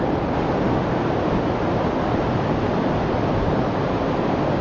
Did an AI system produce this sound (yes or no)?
no